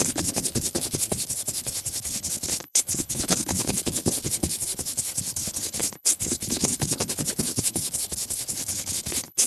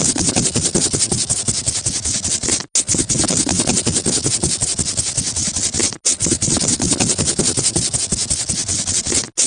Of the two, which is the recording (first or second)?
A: second